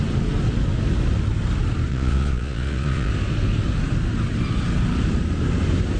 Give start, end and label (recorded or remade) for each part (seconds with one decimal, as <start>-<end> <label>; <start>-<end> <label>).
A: 0.0-1.9 recorded; 1.9-3.1 remade; 3.1-6.0 recorded